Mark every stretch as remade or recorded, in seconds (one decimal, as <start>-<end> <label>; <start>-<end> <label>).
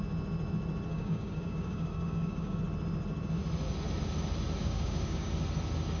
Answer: 0.0-0.9 recorded; 0.9-2.6 remade; 2.6-4.6 recorded; 4.6-5.3 remade; 5.3-6.0 recorded